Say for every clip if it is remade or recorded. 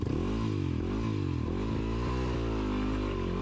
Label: recorded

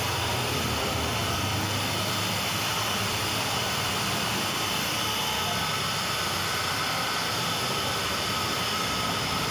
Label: remade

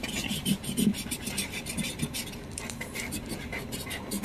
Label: recorded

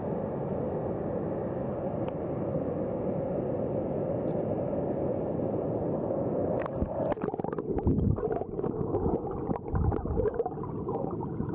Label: recorded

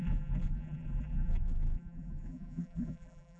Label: remade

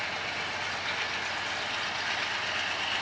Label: recorded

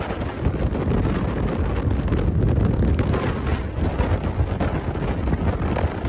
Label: recorded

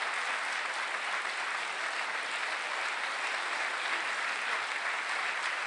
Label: recorded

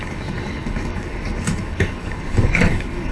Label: remade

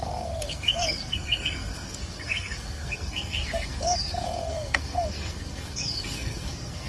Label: remade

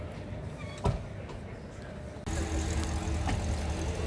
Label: recorded